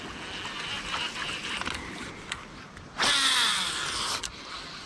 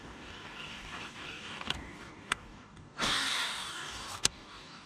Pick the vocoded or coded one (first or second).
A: second